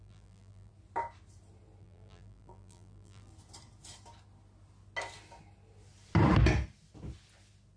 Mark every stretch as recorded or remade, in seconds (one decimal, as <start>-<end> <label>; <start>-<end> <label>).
0.0-0.7 remade; 0.7-1.8 recorded; 1.8-3.3 remade; 3.3-7.8 recorded